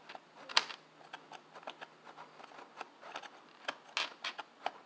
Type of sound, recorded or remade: recorded